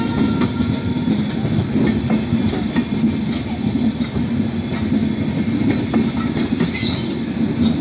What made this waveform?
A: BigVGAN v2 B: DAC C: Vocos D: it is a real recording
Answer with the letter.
D